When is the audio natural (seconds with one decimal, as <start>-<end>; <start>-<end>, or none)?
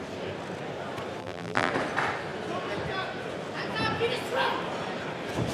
0.0-1.2; 1.7-5.5